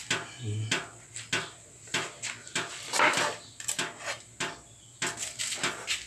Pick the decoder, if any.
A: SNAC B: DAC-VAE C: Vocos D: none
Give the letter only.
D